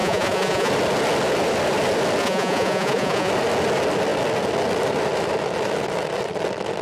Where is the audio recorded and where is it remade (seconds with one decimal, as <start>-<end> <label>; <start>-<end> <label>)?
0.0-0.7 remade; 0.7-2.2 recorded; 2.2-3.3 remade; 3.3-6.8 recorded